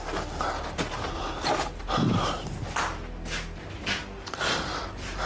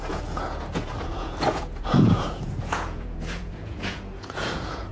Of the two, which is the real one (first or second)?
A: first